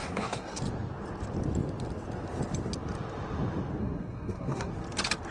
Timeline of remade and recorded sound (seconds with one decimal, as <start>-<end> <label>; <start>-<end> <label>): 0.0-0.6 remade; 0.6-3.8 recorded; 3.8-4.7 remade; 4.7-5.3 recorded